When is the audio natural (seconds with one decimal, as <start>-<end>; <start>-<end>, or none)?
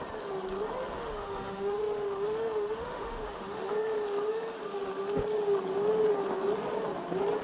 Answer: 0.0-1.0; 3.7-7.4